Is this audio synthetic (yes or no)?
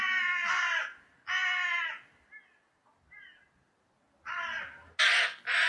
no